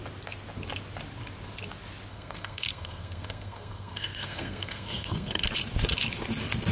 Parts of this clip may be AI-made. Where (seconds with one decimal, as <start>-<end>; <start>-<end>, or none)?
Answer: 2.1-5.4